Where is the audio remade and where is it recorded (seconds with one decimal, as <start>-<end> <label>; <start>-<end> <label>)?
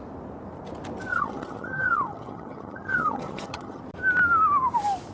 0.0-1.1 recorded; 1.1-3.8 remade; 3.8-5.1 recorded